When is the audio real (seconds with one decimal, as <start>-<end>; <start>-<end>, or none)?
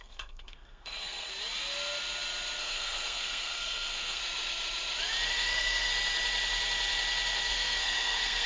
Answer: 1.3-2.6; 4.2-5.3; 5.9-7.5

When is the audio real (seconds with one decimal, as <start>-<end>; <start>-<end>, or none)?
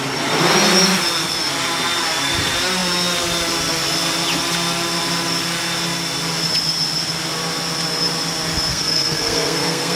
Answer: 0.0-8.7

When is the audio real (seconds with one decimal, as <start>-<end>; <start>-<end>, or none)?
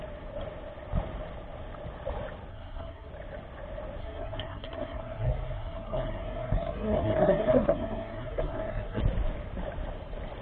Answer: 0.0-2.5; 3.1-4.0; 9.0-10.4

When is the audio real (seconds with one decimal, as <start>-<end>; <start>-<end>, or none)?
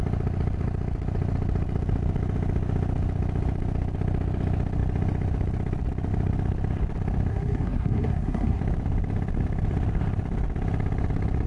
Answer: 0.0-7.3; 8.6-11.5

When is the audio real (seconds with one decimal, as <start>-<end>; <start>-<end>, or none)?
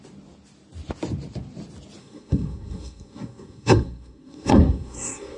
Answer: 0.0-2.0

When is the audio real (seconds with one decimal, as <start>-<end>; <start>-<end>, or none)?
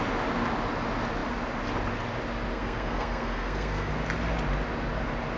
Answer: 0.0-2.5; 3.9-5.4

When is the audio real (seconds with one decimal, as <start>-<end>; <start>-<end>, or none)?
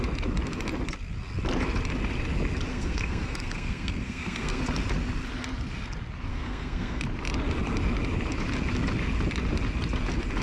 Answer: 0.0-2.7; 4.6-6.3; 7.0-10.4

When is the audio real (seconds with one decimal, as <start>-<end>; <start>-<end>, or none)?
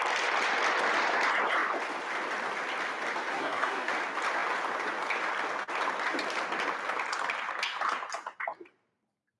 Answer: 0.0-3.3; 3.9-9.4